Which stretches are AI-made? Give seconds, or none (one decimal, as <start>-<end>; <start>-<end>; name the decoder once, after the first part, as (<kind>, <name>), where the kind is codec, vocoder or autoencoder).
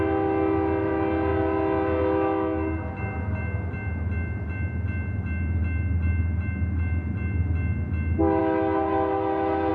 none